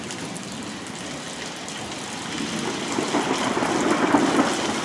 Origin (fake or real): real